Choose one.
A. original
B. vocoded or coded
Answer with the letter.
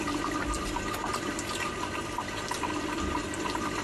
A